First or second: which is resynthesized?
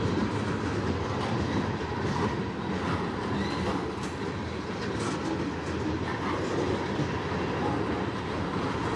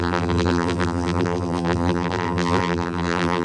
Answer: second